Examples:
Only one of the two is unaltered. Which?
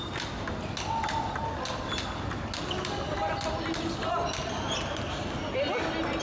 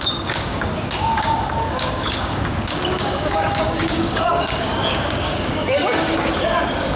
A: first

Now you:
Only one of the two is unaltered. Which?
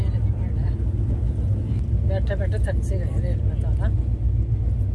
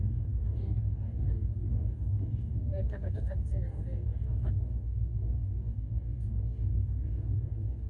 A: first